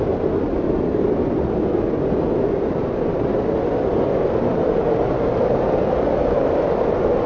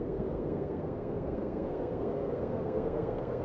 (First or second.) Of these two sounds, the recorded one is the first